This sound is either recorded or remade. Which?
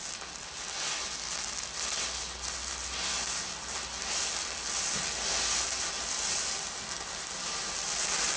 recorded